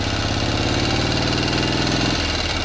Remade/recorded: recorded